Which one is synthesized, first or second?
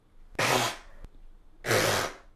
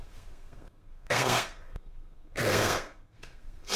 second